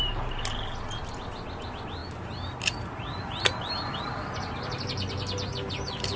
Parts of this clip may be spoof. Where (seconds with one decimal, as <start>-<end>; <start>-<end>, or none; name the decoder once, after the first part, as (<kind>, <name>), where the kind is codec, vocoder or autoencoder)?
none